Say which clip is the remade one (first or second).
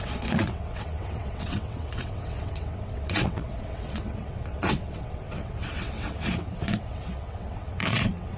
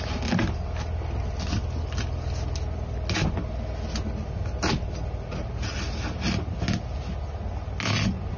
first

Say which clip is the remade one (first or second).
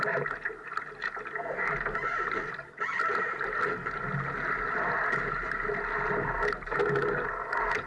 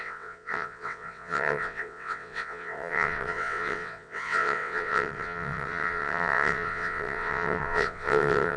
second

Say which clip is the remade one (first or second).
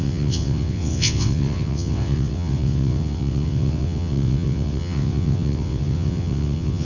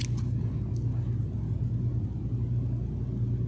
first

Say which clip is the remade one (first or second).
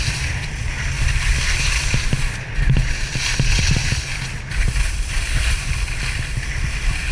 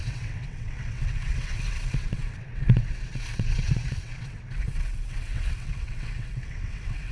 second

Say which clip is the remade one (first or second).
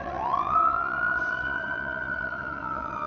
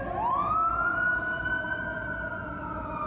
first